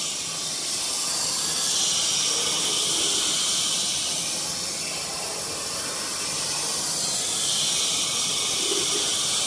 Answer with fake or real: real